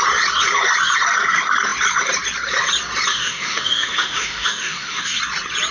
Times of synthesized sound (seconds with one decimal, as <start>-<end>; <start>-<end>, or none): 3.1-5.2

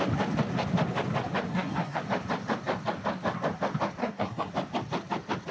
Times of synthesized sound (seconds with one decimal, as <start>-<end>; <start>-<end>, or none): 1.5-2.0; 4.0-4.5

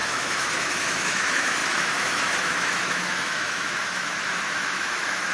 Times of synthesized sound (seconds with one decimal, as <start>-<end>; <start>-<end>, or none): 0.0-5.3

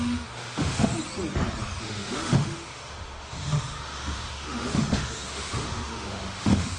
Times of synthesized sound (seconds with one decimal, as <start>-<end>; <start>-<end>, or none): 0.0-0.9; 1.8-6.8

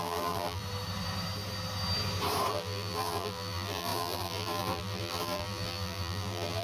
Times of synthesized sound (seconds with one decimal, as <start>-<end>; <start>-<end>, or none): 0.0-0.6; 2.5-6.6

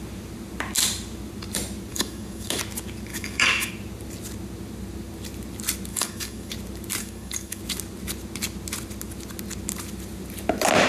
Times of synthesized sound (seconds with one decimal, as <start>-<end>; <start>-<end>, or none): 1.9-2.6; 3.1-3.7; 5.9-6.5; 7.0-7.6

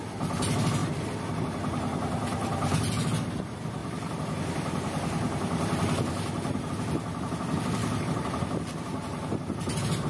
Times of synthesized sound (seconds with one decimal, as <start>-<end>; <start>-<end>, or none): 3.8-6.7; 7.8-9.5

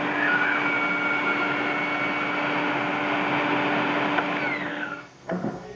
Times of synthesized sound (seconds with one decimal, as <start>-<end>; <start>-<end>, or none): 4.7-5.8